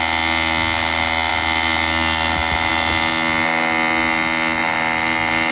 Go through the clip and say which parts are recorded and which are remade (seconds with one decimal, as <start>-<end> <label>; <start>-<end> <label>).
0.0-5.5 recorded